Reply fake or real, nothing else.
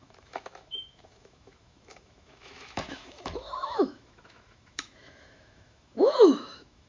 fake